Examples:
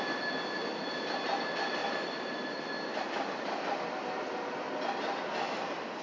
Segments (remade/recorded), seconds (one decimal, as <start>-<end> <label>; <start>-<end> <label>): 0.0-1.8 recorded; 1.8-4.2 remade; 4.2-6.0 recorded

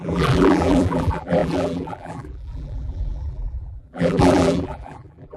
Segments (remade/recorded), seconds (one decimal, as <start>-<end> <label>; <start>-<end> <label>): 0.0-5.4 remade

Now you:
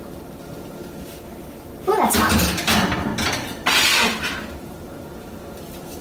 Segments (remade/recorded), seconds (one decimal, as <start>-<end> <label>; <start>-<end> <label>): 0.0-1.7 remade; 1.7-2.6 recorded; 2.6-3.1 remade; 3.1-4.2 recorded; 4.2-6.0 remade